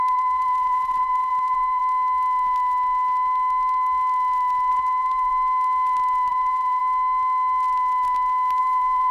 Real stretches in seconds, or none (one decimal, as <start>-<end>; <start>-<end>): 1.8-4.7; 5.3-6.3; 6.8-8.6